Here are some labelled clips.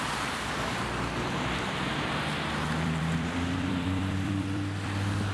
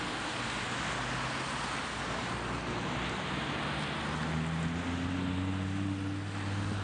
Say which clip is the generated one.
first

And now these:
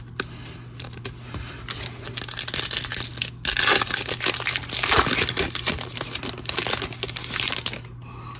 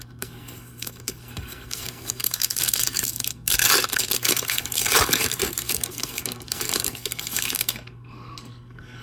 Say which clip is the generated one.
second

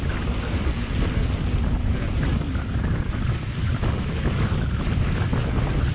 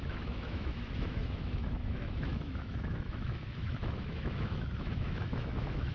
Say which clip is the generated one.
second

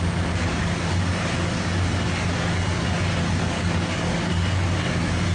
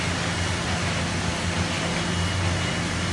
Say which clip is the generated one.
first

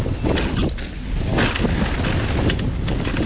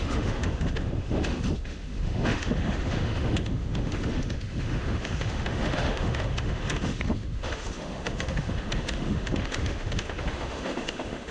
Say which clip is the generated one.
second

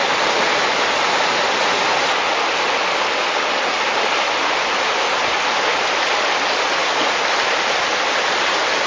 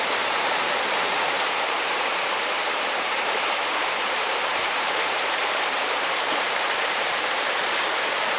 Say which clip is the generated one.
second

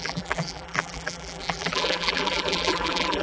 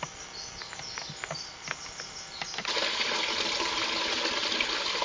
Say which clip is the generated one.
first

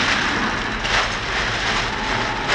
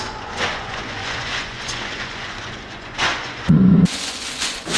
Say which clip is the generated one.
second